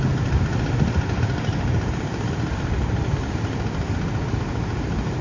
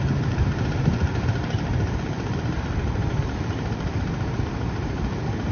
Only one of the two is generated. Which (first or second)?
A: second